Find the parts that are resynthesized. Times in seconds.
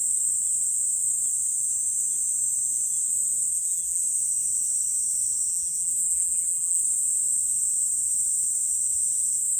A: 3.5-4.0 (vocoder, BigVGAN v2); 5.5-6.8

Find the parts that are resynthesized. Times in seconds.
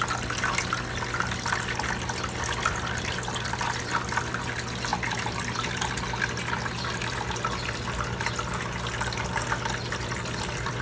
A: none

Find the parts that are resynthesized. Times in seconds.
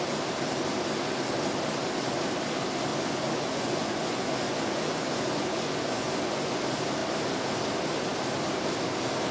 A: 2.9-6.6 (vocoder, Vocos)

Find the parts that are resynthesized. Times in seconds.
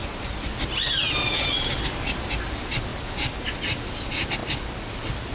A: none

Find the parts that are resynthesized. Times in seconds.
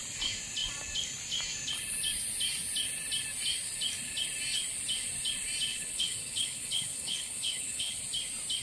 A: 5.7-8.0 (codec, HILCodec)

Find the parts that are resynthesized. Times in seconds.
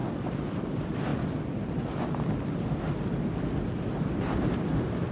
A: 0.7-1.1 (vocoder, BigVGAN v2); 4.2-5.1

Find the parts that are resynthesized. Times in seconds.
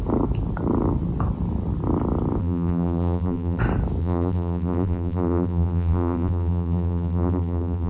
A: 2.4-3.6 (vocoder, BigVGAN v2); 4.0-7.9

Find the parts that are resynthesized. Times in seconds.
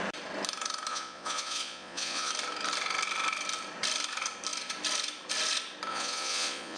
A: 0.9-2.3 (vocoder, Vocos); 5.9-6.8